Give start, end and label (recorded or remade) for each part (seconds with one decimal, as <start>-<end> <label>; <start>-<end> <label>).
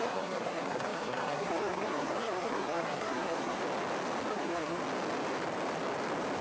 0.0-3.6 remade; 3.6-4.3 recorded; 4.3-4.8 remade; 4.8-6.4 recorded